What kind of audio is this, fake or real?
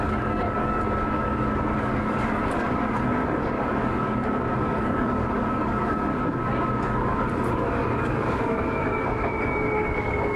fake